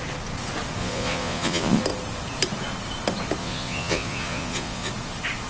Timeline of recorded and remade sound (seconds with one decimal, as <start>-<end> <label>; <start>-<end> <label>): 0.0-0.8 recorded; 0.8-1.8 remade; 1.8-3.4 recorded; 3.4-4.9 remade; 4.9-5.5 recorded